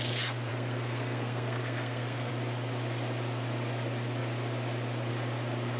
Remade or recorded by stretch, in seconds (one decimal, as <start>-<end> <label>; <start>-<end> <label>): 0.0-0.5 recorded; 0.5-2.3 remade; 2.3-5.8 recorded

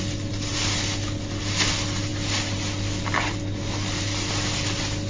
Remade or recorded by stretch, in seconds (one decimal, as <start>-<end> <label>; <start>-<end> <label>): 0.0-5.1 recorded

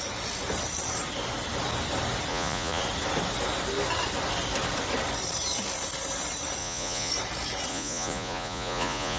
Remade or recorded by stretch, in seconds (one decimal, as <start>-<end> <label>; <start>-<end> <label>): 0.0-2.3 recorded; 2.3-2.8 remade; 2.8-6.6 recorded; 6.6-7.1 remade; 7.1-7.7 recorded; 7.7-9.2 remade

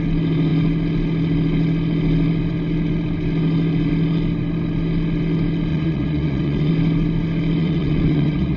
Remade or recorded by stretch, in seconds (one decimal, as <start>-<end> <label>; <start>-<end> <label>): 0.0-5.7 recorded; 5.7-6.7 remade; 6.7-7.6 recorded; 7.6-8.6 remade

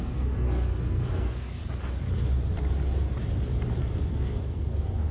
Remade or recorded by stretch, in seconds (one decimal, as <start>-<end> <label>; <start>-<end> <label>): 0.0-1.6 remade; 1.6-3.8 recorded; 3.8-5.1 remade

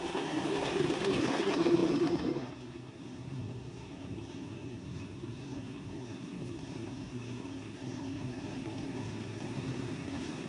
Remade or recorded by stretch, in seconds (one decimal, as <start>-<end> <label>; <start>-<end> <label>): 0.0-10.5 remade

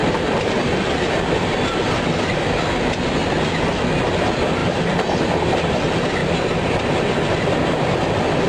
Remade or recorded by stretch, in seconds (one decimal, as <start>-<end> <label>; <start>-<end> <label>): 0.0-1.1 remade; 1.1-4.6 recorded; 4.6-5.8 remade; 5.8-6.2 recorded; 6.2-6.7 remade; 6.7-8.5 recorded